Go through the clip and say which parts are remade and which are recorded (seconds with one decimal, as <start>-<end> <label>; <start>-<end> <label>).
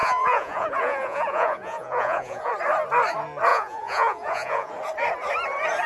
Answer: 0.0-2.5 remade; 2.5-3.5 recorded; 3.5-4.7 remade; 4.7-5.9 recorded